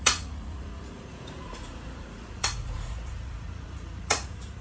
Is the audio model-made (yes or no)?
yes